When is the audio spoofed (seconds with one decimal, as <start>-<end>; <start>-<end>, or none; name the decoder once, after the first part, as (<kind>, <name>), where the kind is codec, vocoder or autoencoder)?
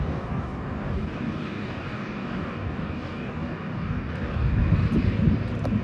0.0-4.6 (codec, DAC)